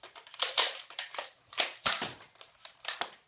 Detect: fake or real fake